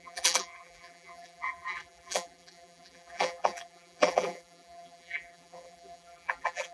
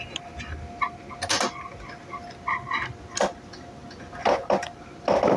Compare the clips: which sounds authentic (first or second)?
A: second